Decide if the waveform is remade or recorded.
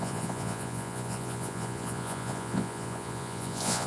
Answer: remade